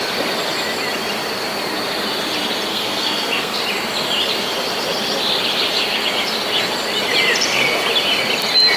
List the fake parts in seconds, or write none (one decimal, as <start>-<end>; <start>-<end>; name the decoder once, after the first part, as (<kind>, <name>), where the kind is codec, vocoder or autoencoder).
2.7-3.6 (codec, SNAC)